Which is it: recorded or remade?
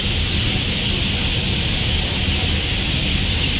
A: recorded